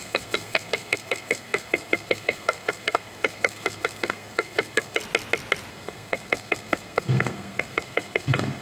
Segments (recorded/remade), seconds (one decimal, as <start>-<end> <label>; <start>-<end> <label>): 0.0-5.0 remade; 5.0-5.7 recorded; 5.7-8.6 remade